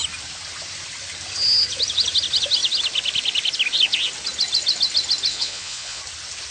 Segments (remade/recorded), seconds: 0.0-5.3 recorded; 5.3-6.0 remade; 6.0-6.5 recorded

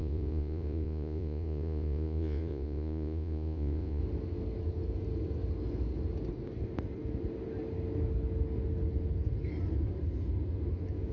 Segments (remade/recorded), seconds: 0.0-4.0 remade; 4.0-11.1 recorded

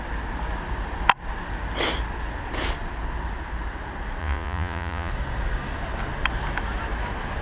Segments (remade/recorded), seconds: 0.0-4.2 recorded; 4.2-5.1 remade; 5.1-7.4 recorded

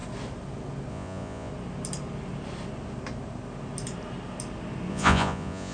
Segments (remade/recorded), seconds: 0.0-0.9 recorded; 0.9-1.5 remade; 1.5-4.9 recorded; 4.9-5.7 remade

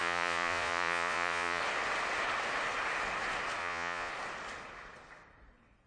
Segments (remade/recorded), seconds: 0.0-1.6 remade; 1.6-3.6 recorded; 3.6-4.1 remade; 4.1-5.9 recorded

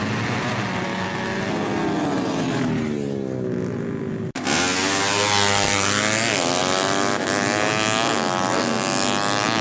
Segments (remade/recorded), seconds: 0.0-9.6 recorded